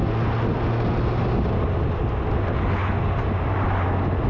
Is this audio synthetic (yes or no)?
no